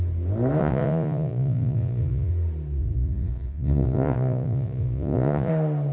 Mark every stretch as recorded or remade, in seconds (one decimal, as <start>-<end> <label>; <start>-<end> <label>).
0.0-0.6 recorded; 0.6-2.3 remade; 2.3-2.8 recorded; 2.8-5.5 remade; 5.5-5.9 recorded